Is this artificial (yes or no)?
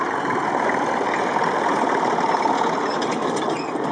no